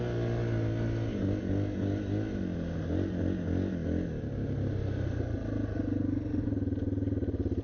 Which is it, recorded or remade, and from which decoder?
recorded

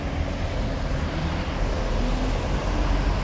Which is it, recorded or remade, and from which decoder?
recorded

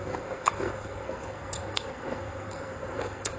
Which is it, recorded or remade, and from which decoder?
remade, codec, SNAC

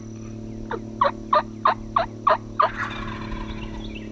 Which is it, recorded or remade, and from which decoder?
recorded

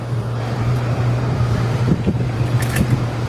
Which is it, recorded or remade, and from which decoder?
remade, vocoder, BigVGAN v2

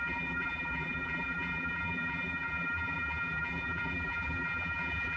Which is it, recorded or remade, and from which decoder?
remade, vocoder, BigVGAN v2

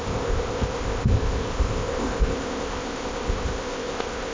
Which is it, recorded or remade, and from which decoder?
remade, codec, ZipCodec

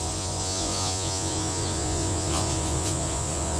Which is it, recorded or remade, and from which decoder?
remade, vocoder, Vocos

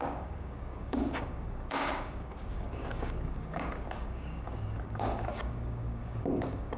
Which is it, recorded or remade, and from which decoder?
remade, codec, DAC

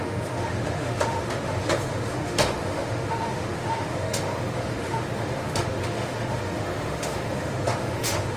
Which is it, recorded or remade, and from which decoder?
remade, autoencoder, DAC-VAE